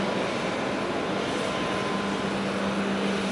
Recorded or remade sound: recorded